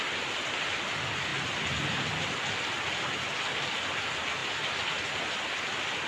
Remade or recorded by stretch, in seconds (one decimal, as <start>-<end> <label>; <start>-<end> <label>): 0.0-6.1 recorded